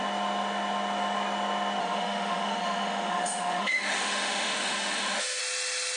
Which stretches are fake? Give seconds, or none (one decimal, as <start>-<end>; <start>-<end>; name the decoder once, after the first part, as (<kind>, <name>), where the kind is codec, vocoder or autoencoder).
1.8-5.4 (autoencoder, DAC-VAE)